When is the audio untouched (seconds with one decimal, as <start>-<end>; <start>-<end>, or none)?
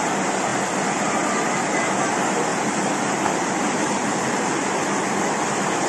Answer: 0.0-2.5; 5.1-5.9